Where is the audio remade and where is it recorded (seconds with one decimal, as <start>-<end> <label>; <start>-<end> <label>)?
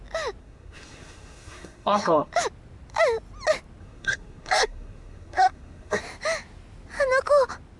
0.0-0.4 recorded; 0.4-2.3 remade; 2.3-3.8 recorded; 3.8-6.0 remade; 6.0-7.8 recorded